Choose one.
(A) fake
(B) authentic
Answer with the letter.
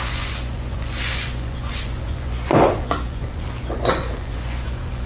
A